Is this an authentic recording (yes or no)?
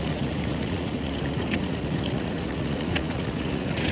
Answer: no